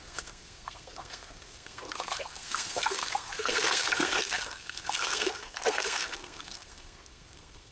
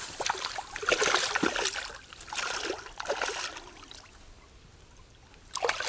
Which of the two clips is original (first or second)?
second